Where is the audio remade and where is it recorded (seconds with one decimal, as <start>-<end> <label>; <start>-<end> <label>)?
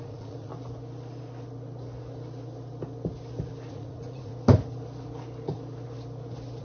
0.0-0.5 remade; 0.5-3.7 recorded; 3.7-4.3 remade; 4.3-6.6 recorded